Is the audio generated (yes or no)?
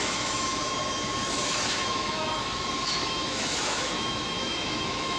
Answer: yes